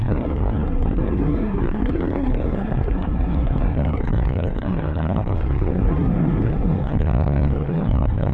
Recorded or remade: remade